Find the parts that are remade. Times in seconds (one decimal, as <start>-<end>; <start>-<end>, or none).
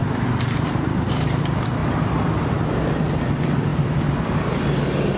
0.0-1.4; 3.7-4.6